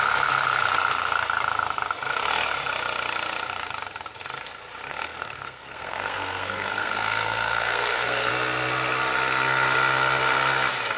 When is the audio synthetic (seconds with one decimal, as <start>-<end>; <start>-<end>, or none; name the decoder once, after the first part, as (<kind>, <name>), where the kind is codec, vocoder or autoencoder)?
4.9-8.3 (codec, SNAC)